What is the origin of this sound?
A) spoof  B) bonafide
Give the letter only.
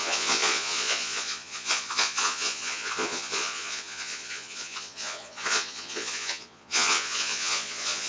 A